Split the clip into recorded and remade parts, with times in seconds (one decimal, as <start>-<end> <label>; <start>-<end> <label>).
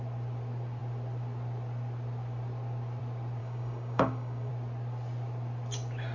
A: 0.0-3.4 recorded; 3.4-4.5 remade; 4.5-6.1 recorded